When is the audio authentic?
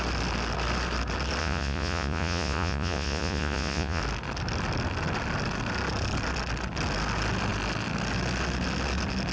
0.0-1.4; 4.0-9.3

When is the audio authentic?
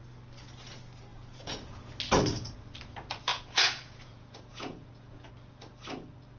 0.0-1.1; 1.9-3.3; 5.3-6.4